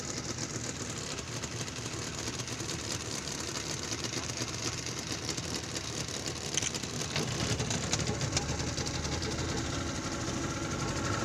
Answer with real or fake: real